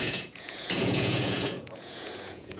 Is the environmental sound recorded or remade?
remade